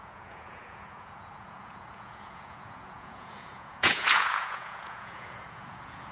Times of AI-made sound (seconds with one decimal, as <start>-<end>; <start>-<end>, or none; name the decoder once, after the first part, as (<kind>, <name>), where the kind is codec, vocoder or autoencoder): 0.0-6.1 (vocoder, Vocos)